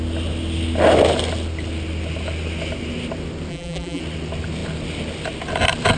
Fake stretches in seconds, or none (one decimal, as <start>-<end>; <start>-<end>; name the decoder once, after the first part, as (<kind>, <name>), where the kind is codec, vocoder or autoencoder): 3.5-4.0 (vocoder, BigVGAN v2)